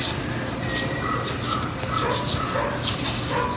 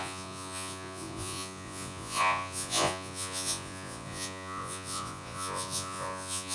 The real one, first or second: first